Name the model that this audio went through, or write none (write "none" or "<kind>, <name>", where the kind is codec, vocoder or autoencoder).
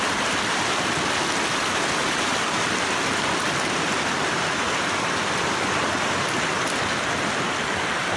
none